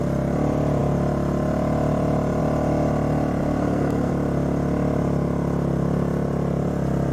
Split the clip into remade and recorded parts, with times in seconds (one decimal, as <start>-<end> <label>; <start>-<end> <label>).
0.0-3.4 recorded; 3.4-4.1 remade; 4.1-7.1 recorded